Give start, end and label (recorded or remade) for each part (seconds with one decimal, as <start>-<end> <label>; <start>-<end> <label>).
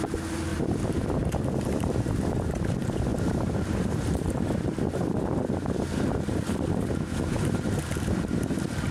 0.0-0.5 recorded; 0.5-2.7 remade; 2.7-3.1 recorded; 3.1-6.9 remade; 6.9-8.9 recorded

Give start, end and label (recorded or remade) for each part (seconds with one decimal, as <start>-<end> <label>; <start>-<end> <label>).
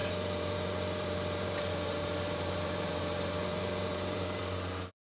0.0-5.0 remade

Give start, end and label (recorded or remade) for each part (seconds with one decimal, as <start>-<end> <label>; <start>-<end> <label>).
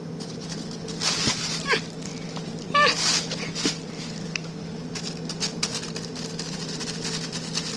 0.0-7.8 recorded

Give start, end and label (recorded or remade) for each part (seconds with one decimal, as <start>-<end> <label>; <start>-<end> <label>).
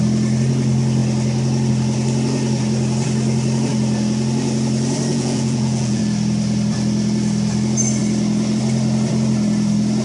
0.0-5.1 recorded; 5.1-6.0 remade; 6.0-10.0 recorded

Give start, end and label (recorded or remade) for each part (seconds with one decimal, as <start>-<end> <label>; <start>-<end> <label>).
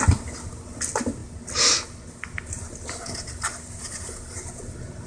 0.0-5.1 recorded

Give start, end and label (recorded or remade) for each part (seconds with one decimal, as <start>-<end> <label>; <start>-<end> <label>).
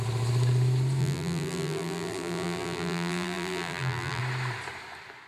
0.0-1.0 recorded; 1.0-4.2 remade; 4.2-5.3 recorded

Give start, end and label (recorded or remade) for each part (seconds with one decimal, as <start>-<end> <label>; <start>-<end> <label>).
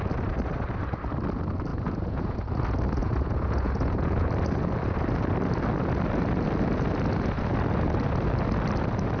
0.0-1.7 recorded; 1.7-2.4 remade; 2.4-3.0 recorded; 3.0-4.3 remade; 4.3-9.2 recorded